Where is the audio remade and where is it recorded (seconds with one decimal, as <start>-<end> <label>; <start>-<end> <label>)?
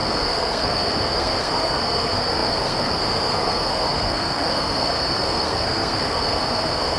0.0-7.0 remade